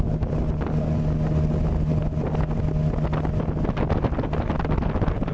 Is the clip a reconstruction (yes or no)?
no